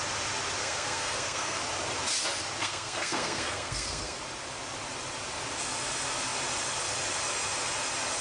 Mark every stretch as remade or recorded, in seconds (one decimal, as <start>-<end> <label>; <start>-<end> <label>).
0.0-0.6 recorded; 0.6-1.6 remade; 1.6-2.6 recorded; 2.6-4.2 remade; 4.2-8.2 recorded